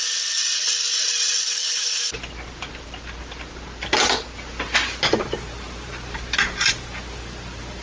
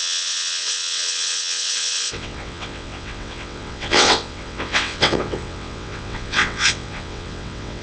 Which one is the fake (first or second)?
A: second